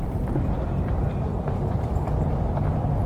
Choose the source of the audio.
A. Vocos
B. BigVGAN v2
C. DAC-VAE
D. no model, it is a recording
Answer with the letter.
B